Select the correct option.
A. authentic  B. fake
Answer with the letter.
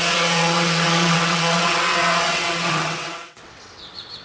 B